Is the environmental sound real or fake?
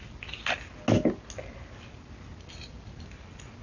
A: real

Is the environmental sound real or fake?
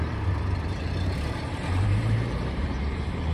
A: fake